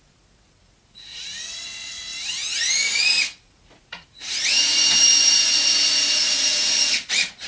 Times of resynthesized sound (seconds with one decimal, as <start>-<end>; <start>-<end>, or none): 0.0-2.1; 2.7-7.5